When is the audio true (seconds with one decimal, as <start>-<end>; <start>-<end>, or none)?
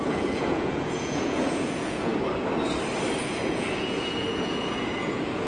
2.1-3.2